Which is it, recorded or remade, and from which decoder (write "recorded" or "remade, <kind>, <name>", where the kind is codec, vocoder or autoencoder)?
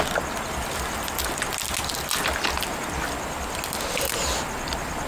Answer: recorded